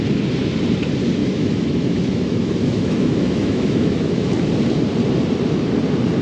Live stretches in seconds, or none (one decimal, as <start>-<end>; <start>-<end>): 0.0-1.2; 4.5-6.2